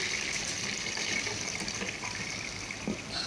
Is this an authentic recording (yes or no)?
yes